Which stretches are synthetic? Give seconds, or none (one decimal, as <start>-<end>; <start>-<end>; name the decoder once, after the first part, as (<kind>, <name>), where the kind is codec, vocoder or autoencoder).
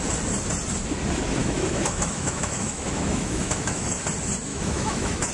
1.4-4.0 (autoencoder, DAC-VAE); 4.5-5.3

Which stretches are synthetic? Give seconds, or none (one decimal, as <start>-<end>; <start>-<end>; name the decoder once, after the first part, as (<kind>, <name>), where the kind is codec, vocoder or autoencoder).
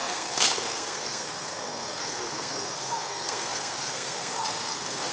0.0-5.1 (codec, SNAC)